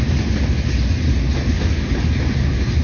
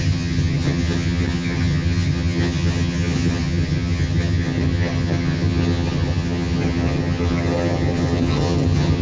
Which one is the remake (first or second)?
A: second